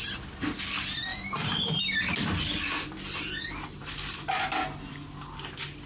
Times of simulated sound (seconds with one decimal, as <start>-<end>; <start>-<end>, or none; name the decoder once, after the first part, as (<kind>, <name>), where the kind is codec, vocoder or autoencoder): 1.1-1.8 (vocoder, BigVGAN v2)